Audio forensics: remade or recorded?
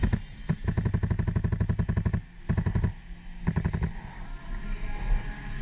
recorded